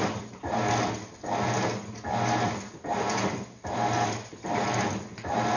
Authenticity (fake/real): real